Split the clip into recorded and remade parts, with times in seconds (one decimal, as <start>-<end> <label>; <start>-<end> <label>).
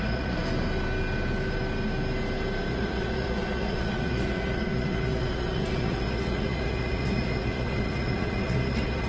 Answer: 0.0-0.4 remade; 0.4-2.7 recorded; 2.7-9.1 remade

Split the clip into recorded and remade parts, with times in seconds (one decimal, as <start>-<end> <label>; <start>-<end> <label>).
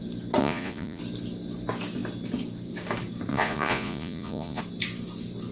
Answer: 0.0-0.4 recorded; 0.4-1.0 remade; 1.0-3.3 recorded; 3.3-4.6 remade; 4.6-5.5 recorded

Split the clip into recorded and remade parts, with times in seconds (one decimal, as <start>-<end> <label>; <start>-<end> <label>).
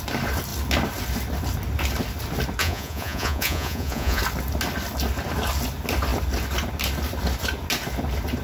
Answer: 0.0-2.6 recorded; 2.6-4.2 remade; 4.2-8.4 recorded